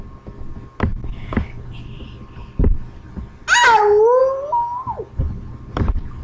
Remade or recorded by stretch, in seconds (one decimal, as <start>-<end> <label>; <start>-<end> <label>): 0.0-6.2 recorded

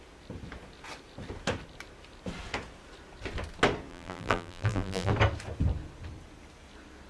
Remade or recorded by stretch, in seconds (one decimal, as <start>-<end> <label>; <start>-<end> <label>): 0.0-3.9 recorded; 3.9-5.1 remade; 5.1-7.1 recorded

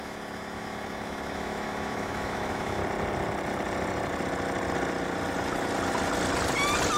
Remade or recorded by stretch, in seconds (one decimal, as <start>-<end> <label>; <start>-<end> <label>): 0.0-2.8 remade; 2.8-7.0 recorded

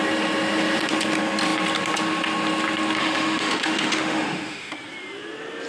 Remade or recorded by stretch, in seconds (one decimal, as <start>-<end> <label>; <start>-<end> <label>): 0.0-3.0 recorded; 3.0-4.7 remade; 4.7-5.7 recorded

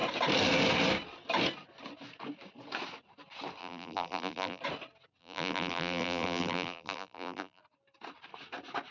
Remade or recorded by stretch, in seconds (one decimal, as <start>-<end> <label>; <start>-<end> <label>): 0.0-3.6 recorded; 3.6-4.6 remade; 4.6-5.2 recorded; 5.2-7.6 remade; 7.6-8.9 recorded